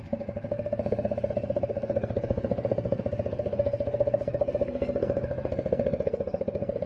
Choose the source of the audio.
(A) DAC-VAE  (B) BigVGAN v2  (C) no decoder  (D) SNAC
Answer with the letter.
D